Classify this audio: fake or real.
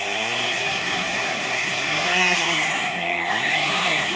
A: fake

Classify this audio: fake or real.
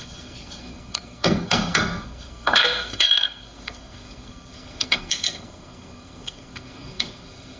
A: fake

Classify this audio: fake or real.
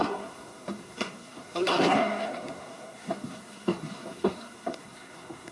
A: fake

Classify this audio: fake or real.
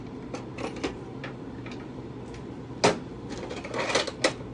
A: real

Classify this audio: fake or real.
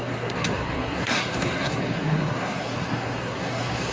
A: fake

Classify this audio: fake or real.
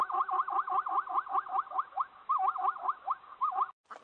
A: real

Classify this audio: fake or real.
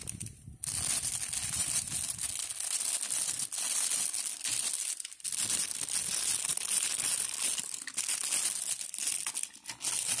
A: real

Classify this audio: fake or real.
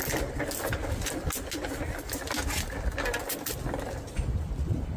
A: real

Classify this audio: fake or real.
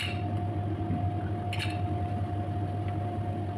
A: real